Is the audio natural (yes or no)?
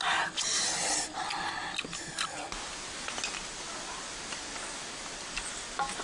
yes